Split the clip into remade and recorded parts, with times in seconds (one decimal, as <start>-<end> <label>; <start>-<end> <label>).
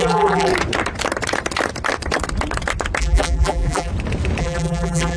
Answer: 0.0-0.5 remade; 0.5-3.0 recorded; 3.0-3.9 remade; 3.9-4.4 recorded; 4.4-5.2 remade